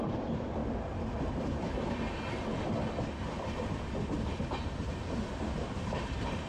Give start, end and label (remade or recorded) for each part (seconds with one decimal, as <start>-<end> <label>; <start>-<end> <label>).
0.0-0.6 remade; 0.6-4.5 recorded; 4.5-6.5 remade